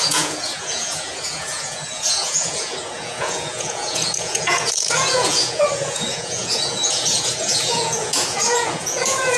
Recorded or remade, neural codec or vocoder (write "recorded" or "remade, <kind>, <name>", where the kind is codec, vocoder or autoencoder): remade, vocoder, Vocos